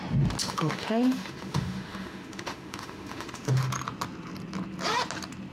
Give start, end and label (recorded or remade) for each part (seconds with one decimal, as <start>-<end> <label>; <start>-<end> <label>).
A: 0.0-0.4 recorded; 0.4-3.7 remade; 3.7-5.5 recorded